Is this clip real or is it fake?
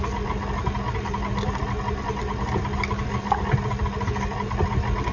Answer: real